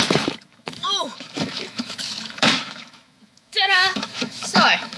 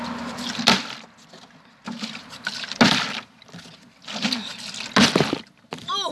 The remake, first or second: first